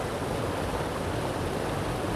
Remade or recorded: recorded